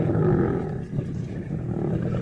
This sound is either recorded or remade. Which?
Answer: recorded